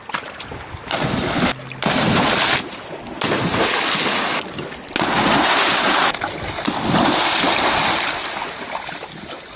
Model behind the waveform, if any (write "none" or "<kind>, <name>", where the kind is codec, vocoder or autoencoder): none